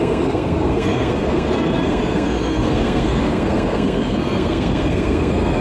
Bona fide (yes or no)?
no